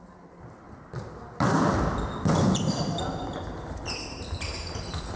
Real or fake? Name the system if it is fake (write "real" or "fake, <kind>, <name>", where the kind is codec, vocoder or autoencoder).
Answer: real